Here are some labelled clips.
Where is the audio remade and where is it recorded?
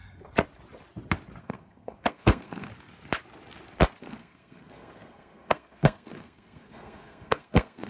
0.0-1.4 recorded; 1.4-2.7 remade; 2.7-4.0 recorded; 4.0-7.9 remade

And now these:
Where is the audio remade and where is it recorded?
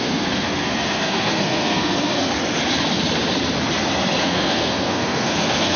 0.0-2.3 remade; 2.3-4.2 recorded; 4.2-5.8 remade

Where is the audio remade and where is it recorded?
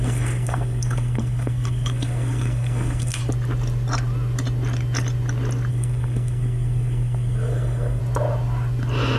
0.0-3.2 remade; 3.2-5.7 recorded; 5.7-8.0 remade; 8.0-9.2 recorded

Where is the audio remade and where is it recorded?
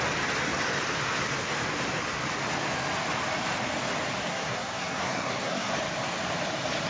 0.0-4.3 recorded; 4.3-5.7 remade; 5.7-6.9 recorded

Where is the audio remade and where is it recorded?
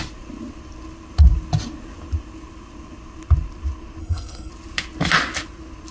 0.0-4.0 recorded; 4.0-4.5 remade; 4.5-5.9 recorded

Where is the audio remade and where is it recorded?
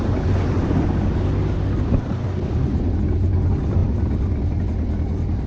0.0-5.5 recorded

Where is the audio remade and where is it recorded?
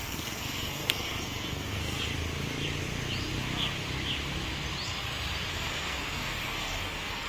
0.0-2.1 remade; 2.1-5.5 recorded; 5.5-7.3 remade